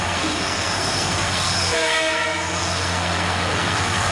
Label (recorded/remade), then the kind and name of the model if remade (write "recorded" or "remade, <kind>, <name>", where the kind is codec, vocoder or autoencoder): remade, codec, SNAC